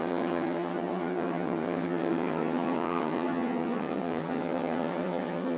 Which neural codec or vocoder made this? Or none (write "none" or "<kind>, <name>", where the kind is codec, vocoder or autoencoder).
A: vocoder, HiFi-GAN